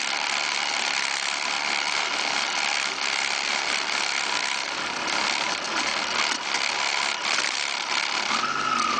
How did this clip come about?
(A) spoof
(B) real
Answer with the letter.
B